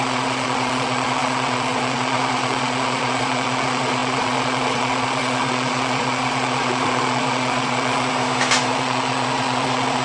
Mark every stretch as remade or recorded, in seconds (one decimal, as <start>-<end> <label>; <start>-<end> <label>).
0.0-8.1 remade; 8.1-8.7 recorded; 8.7-10.0 remade